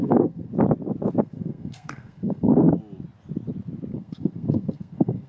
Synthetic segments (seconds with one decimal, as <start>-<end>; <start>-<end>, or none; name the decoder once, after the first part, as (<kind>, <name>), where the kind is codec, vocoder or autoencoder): 0.0-0.5 (codec, SNAC); 1.2-2.8; 3.9-5.3